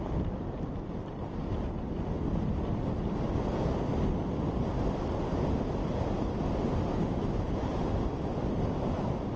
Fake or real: real